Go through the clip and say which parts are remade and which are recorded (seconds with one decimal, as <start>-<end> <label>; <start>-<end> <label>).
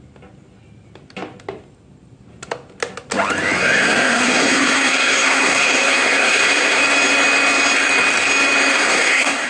0.0-3.6 recorded; 3.6-6.8 remade; 6.8-8.7 recorded; 8.7-9.5 remade